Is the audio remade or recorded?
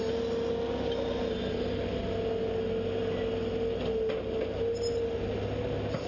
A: recorded